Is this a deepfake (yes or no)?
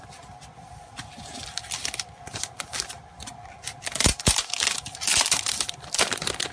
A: yes